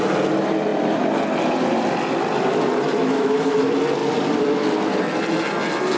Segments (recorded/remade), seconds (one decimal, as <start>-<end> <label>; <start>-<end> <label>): 0.0-3.0 recorded; 3.0-3.6 remade; 3.6-6.0 recorded